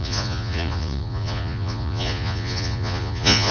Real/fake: fake